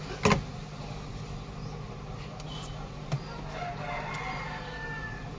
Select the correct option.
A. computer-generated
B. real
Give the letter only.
B